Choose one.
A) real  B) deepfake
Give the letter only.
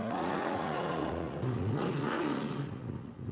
B